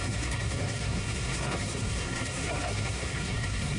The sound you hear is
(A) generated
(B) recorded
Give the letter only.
A